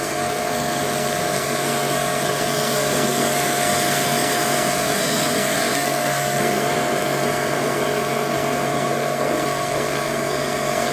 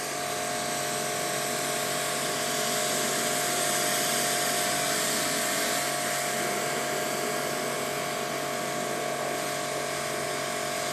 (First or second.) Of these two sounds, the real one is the second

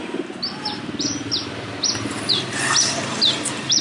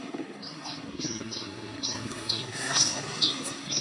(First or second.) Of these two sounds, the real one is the first